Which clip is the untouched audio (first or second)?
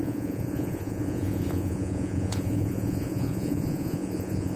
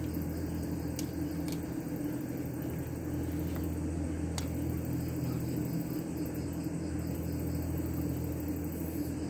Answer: second